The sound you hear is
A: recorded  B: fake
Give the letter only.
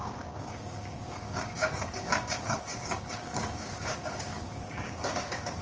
B